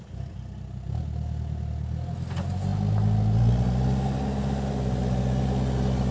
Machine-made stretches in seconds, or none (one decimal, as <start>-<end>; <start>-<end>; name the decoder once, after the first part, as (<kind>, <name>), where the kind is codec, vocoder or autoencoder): none

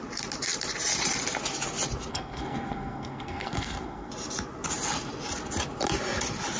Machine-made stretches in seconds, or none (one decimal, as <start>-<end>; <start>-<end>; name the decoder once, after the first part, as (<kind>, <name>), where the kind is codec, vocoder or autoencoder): 2.1-4.1 (codec, SNAC)

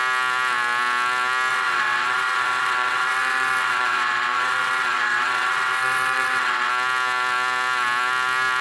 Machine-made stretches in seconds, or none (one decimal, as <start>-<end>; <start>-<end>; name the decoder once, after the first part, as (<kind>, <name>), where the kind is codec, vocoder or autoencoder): 1.5-6.7 (vocoder, WaveNeXt)

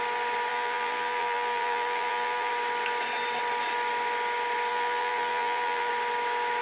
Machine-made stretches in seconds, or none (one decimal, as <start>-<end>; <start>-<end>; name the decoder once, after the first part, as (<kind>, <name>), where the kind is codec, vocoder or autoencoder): 0.5-2.5 (vocoder, BigVGAN v2); 4.7-5.9

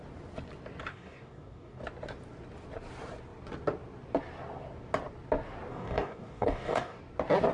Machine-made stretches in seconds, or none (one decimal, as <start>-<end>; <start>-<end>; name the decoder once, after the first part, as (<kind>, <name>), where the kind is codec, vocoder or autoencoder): 0.9-1.8 (codec, DAC); 5.7-7.0

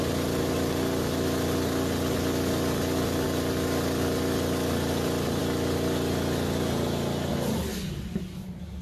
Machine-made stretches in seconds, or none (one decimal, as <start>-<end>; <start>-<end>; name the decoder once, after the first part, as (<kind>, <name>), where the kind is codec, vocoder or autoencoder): none

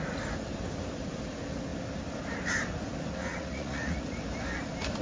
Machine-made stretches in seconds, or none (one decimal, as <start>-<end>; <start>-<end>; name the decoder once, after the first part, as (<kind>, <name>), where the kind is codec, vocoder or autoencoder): 3.3-4.2 (vocoder, Vocos)